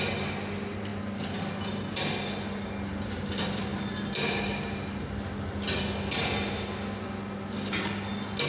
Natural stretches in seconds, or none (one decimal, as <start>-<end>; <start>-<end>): 0.0-8.5